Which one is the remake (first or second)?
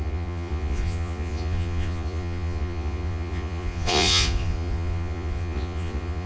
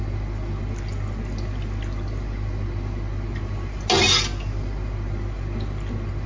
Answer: first